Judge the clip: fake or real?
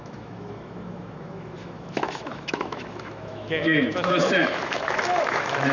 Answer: fake